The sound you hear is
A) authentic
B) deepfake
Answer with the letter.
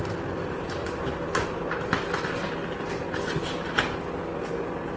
A